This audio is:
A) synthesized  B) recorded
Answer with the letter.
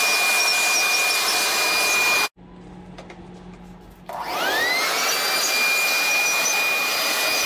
B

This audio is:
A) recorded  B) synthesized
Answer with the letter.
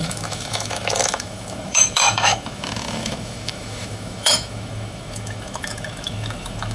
B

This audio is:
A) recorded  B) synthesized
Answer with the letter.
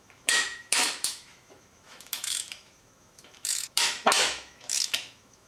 B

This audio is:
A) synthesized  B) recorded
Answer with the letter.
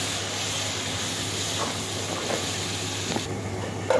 B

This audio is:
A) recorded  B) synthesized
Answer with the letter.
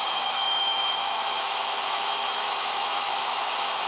B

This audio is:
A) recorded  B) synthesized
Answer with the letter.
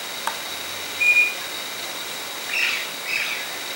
A